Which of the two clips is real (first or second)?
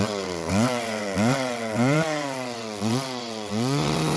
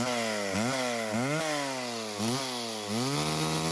second